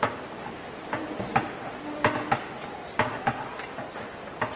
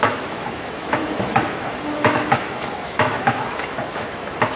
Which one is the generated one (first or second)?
second